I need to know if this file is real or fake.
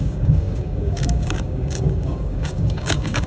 fake